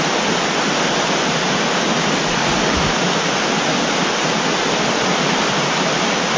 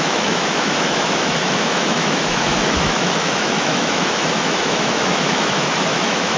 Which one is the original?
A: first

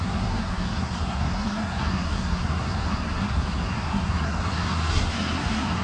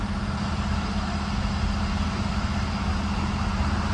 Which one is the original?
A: second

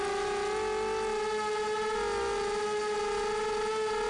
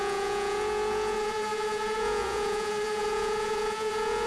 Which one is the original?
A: first